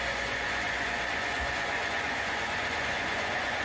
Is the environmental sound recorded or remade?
remade